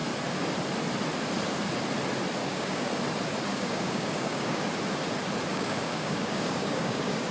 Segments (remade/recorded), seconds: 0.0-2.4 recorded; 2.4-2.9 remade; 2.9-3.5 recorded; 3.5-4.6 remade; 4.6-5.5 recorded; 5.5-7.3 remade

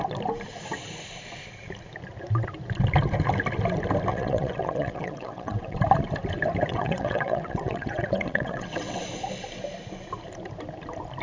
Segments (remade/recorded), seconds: 0.0-4.1 recorded; 4.1-5.8 remade; 5.8-6.7 recorded; 6.7-9.0 remade; 9.0-11.2 recorded

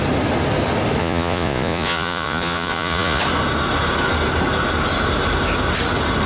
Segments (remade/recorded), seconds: 0.0-1.0 recorded; 1.0-3.2 remade; 3.2-6.3 recorded